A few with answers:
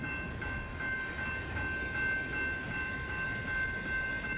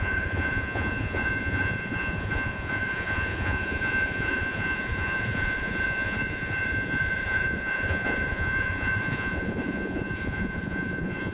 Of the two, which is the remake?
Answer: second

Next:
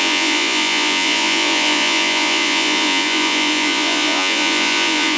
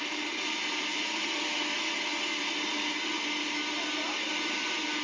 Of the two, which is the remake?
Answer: first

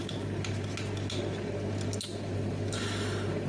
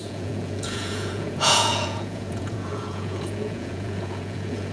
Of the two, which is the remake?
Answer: second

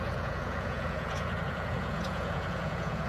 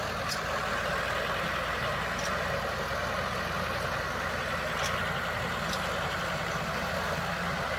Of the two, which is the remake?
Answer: first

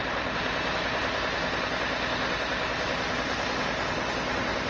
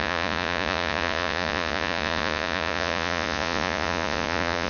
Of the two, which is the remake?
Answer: second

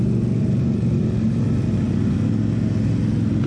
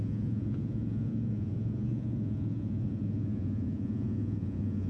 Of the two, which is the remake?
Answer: second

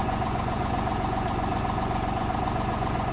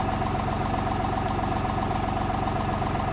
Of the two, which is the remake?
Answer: first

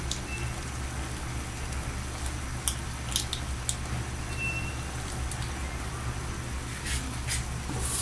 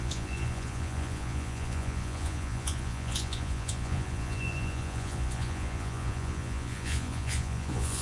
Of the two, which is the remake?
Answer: second